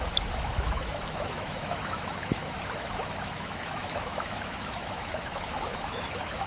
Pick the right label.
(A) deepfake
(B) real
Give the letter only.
A